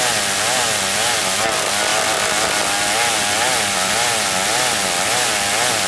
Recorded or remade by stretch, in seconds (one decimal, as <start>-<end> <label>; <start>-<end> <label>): 0.0-5.9 recorded